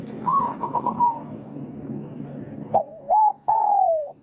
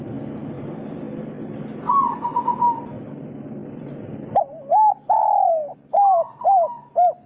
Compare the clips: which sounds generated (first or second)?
first